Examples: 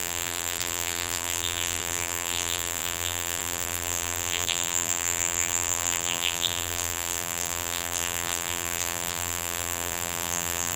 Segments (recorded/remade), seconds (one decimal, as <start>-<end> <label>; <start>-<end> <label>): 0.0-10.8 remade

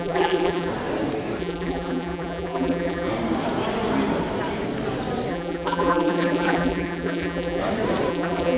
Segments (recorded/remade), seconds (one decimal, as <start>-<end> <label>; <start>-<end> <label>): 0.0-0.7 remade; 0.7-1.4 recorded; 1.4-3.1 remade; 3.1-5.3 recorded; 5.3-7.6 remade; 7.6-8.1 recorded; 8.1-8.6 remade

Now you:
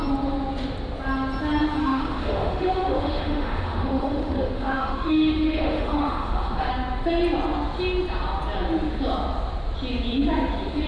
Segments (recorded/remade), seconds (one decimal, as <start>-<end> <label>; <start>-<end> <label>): 0.0-1.8 recorded; 1.8-6.7 remade; 6.7-10.9 recorded

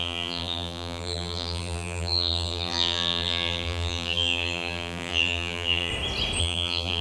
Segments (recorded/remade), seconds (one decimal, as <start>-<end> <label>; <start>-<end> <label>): 0.0-5.9 remade; 5.9-6.4 recorded; 6.4-7.0 remade